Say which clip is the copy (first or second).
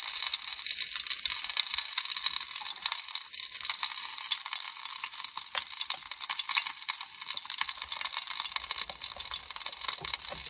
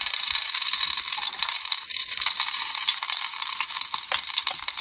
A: second